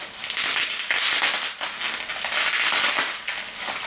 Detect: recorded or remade recorded